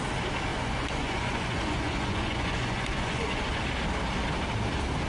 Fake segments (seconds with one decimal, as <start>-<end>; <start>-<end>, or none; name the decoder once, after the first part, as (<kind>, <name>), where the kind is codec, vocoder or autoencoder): 0.5-3.6 (vocoder, Vocos)